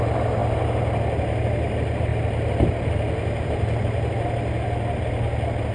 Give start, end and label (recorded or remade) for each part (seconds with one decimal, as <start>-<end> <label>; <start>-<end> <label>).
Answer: 0.0-5.7 recorded